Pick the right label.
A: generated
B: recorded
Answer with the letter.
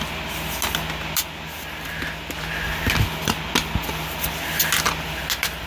B